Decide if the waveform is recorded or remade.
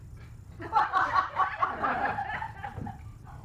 recorded